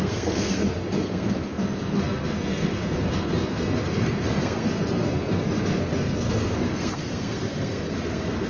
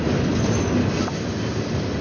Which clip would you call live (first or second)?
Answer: second